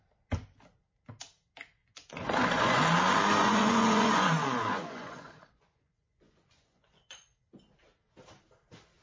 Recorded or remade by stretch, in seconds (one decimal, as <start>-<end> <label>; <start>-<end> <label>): 0.0-1.8 recorded; 1.8-2.8 remade; 2.8-3.4 recorded; 3.4-7.4 remade; 7.4-9.0 recorded